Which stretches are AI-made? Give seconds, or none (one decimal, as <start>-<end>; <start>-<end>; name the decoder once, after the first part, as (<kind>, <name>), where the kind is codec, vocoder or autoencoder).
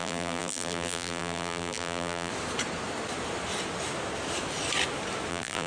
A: 0.0-2.3 (vocoder, BigVGAN v2); 5.3-5.7